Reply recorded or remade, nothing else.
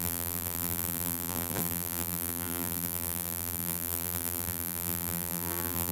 remade